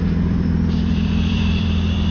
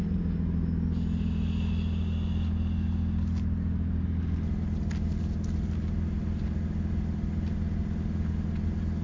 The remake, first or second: first